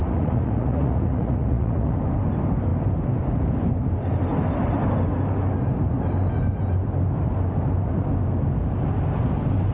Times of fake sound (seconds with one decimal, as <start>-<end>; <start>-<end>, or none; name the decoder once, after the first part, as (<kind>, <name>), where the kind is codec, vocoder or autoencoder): 0.0-2.0 (vocoder, Vocos)